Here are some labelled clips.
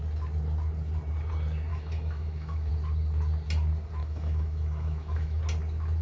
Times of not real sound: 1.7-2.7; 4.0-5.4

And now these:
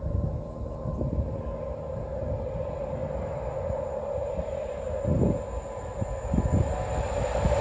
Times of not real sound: none

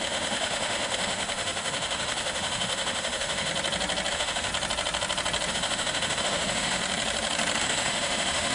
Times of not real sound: 0.0-3.5; 4.1-4.5; 5.5-6.8; 7.6-8.5